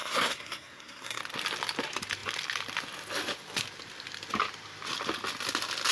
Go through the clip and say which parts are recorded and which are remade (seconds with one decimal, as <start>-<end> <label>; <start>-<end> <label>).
0.0-1.2 remade; 1.2-5.9 recorded